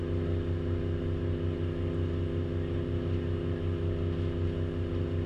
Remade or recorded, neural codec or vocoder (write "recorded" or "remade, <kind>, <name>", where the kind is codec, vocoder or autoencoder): recorded